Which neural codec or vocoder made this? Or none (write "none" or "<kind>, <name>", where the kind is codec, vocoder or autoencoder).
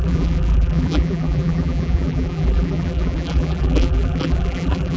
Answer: vocoder, BigVGAN v2